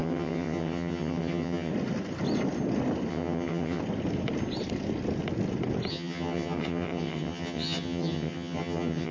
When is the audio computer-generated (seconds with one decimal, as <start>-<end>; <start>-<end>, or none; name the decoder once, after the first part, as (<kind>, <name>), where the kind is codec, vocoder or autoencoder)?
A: 0.0-1.7 (vocoder, HiFi-GAN); 3.1-3.8; 5.9-9.1